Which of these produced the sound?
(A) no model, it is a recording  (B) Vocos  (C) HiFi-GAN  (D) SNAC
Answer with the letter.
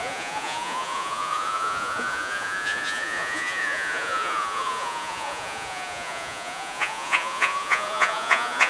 B